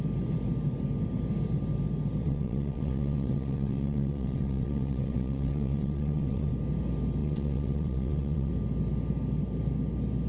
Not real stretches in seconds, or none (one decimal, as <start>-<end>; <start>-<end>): 2.2-6.5; 7.2-8.5